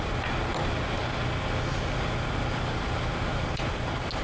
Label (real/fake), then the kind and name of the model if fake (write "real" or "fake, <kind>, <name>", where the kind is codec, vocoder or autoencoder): real